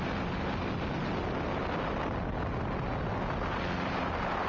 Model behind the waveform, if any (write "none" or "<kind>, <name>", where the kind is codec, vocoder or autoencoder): none